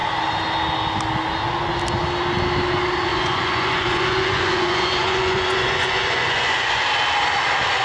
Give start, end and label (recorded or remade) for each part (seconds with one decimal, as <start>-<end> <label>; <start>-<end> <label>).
0.0-3.1 recorded; 3.1-6.8 remade; 6.8-7.8 recorded